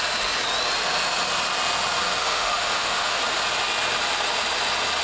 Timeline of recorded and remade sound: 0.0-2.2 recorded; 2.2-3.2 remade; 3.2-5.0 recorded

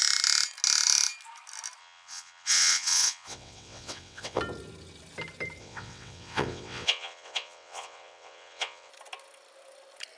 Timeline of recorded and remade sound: 0.0-1.8 recorded; 1.8-4.4 remade; 4.4-5.6 recorded; 5.6-8.9 remade; 8.9-10.2 recorded

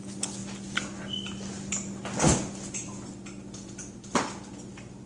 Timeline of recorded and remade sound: 0.0-5.1 recorded

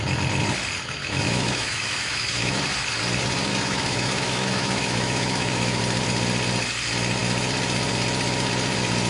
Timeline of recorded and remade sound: 0.0-1.0 recorded; 1.0-2.6 remade; 2.6-3.5 recorded; 3.5-5.8 remade; 5.8-9.1 recorded

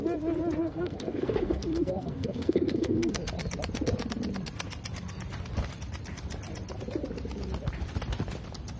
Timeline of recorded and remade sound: 0.0-0.6 recorded; 0.6-3.1 remade; 3.1-8.8 recorded

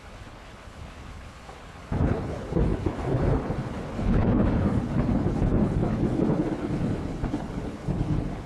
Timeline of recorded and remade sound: 0.0-8.5 remade